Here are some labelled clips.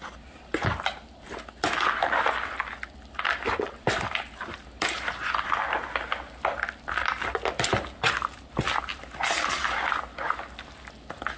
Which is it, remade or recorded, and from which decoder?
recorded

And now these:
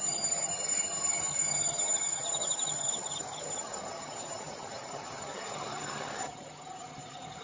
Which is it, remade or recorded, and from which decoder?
remade, vocoder, HiFi-GAN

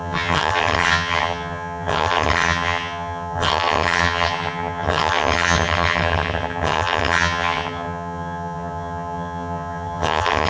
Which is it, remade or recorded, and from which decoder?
remade, vocoder, HiFi-GAN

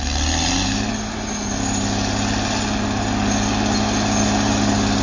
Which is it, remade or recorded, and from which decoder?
recorded